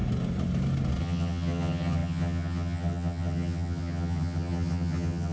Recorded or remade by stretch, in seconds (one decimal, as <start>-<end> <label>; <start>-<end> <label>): 0.0-1.0 recorded; 1.0-5.3 remade